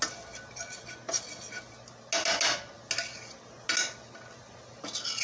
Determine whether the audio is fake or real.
real